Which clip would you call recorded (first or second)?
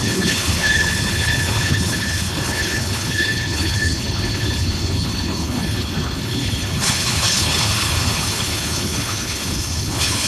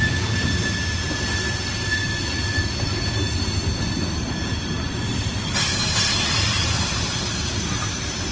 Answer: second